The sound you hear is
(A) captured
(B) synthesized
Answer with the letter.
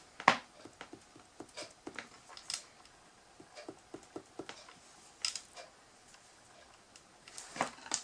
A